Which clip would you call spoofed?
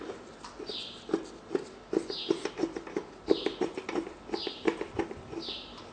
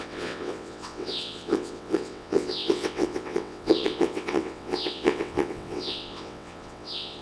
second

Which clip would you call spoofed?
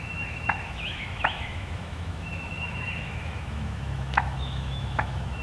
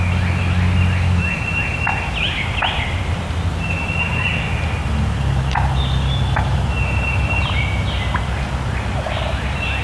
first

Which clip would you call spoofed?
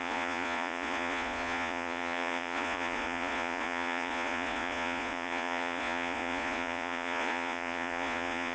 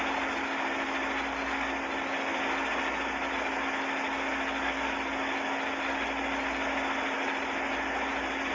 first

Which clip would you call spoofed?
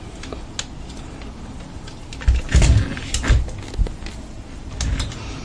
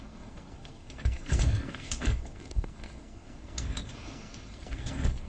second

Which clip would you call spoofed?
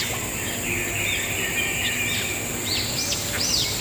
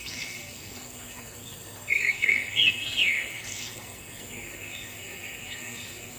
second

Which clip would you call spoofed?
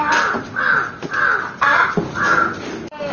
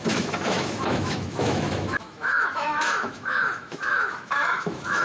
second